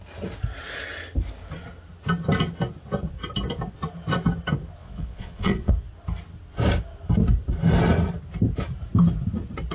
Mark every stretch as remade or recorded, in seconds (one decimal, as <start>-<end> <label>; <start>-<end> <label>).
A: 0.0-4.8 recorded; 4.8-5.7 remade; 5.7-9.7 recorded